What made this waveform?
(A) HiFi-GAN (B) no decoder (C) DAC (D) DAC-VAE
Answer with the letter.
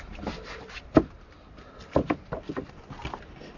B